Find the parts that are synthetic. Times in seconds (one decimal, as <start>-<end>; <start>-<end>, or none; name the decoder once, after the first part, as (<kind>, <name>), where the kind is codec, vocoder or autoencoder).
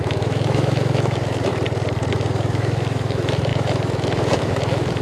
0.0-1.5 (autoencoder, DAC-VAE); 2.1-5.0